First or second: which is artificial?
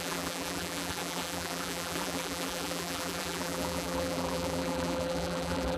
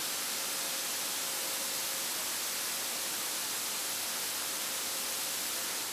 first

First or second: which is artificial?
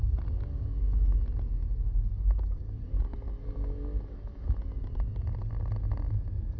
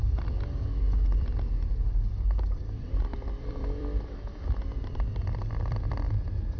second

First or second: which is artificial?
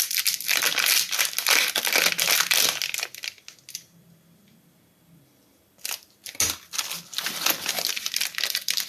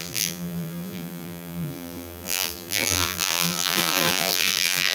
second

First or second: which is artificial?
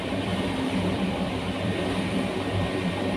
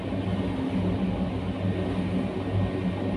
first